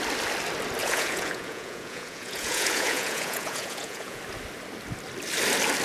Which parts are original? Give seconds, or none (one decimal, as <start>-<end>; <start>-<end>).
0.0-0.8; 4.2-5.8